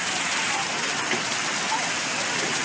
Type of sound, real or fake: real